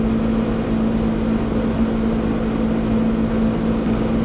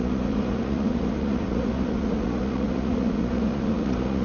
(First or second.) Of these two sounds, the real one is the first